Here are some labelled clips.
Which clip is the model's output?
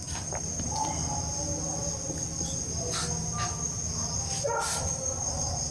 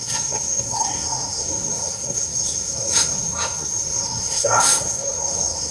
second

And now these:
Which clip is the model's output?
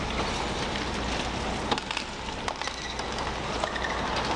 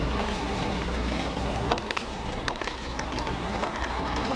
second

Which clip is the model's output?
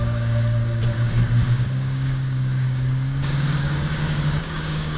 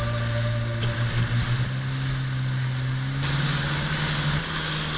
first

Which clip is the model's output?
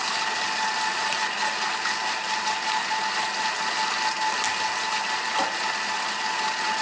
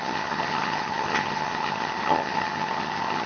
second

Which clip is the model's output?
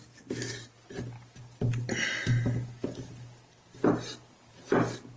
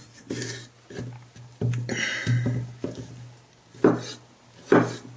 first